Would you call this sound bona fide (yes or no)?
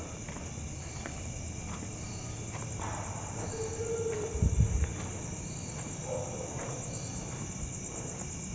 yes